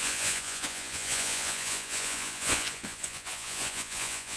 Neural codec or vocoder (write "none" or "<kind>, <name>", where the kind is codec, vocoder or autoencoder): vocoder, Vocos